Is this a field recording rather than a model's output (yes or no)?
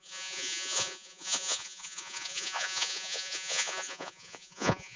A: no